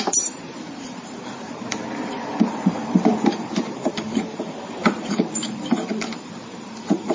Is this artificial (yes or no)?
yes